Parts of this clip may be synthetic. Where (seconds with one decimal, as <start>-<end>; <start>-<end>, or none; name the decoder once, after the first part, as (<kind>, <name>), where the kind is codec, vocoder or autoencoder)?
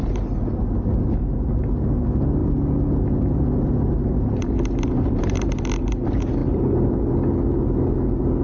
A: 6.4-7.0 (vocoder, BigVGAN v2)